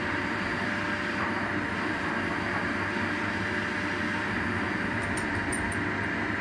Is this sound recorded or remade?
remade